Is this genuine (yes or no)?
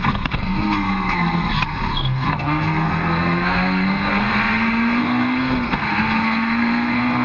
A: no